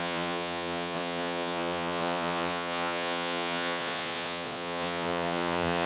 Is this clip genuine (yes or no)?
no